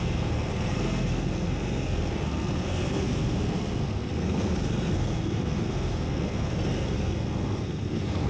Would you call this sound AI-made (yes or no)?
yes